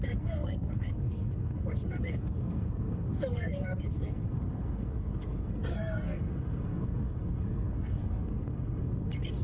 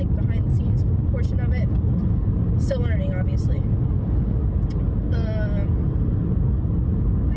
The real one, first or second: second